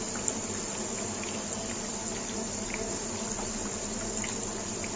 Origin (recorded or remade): recorded